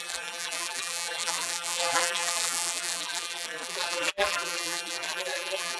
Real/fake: fake